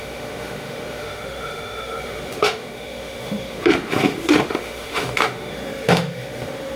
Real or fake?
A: fake